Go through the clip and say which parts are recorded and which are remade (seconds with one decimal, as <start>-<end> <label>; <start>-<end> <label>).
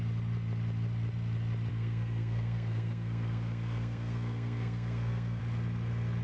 0.0-1.7 recorded; 1.7-5.4 remade; 5.4-6.2 recorded